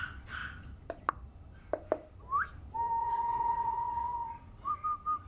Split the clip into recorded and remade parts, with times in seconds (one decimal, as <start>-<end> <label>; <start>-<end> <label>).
0.0-3.0 recorded; 3.0-4.7 remade; 4.7-5.3 recorded